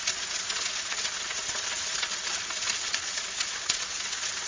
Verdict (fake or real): fake